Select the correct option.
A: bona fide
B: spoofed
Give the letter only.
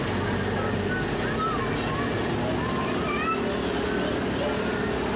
A